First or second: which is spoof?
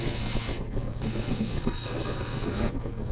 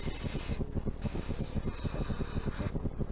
first